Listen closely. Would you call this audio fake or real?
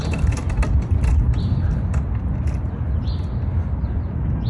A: real